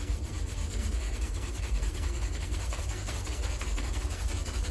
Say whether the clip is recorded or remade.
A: remade